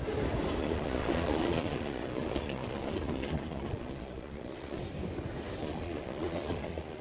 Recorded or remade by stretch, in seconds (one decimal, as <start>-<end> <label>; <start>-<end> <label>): 0.0-0.6 recorded; 0.6-4.8 remade; 4.8-5.6 recorded; 5.6-7.0 remade